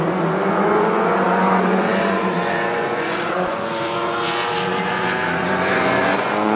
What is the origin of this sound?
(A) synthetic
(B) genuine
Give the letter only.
A